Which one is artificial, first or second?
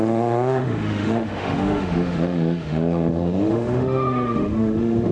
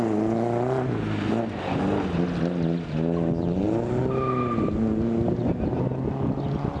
first